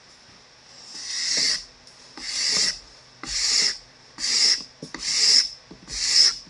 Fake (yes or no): no